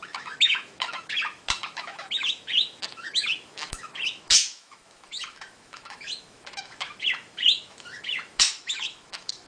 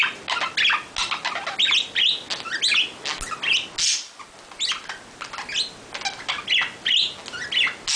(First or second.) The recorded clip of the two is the second